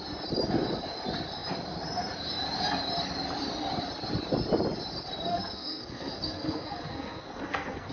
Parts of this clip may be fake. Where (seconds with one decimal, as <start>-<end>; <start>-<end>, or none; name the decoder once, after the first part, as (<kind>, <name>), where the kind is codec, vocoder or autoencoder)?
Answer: 5.3-7.9 (codec, SNAC)